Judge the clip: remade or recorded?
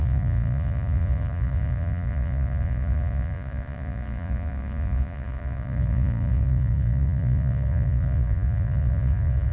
remade